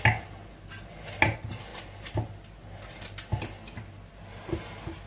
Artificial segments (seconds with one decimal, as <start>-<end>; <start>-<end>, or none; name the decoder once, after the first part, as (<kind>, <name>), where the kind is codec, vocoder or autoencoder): 1.7-2.9 (vocoder, BigVGAN v2)